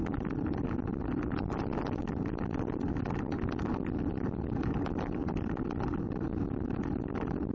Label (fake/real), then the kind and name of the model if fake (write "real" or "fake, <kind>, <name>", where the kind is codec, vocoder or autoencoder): real